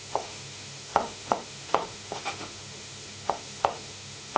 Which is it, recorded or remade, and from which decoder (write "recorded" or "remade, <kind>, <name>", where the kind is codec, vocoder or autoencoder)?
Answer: remade, autoencoder, DAC-VAE